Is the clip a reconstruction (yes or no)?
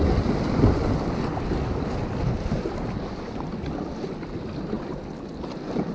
no